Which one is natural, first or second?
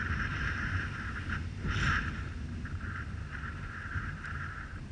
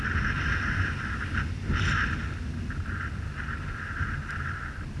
second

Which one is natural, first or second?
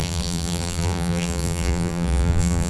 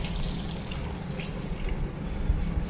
second